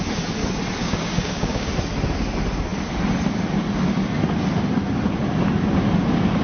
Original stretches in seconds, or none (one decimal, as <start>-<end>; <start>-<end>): 0.0-0.8; 1.7-6.4